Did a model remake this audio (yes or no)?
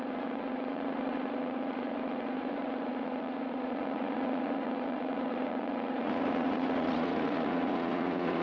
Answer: yes